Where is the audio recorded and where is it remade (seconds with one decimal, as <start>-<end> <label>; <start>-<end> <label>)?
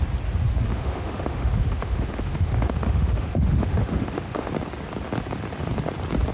0.0-0.7 recorded; 0.7-4.5 remade; 4.5-6.3 recorded